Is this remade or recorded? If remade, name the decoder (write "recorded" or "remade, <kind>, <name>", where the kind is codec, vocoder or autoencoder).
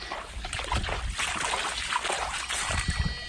recorded